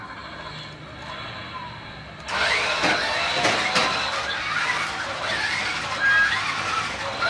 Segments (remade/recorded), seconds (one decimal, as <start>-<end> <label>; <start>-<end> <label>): 0.0-7.3 recorded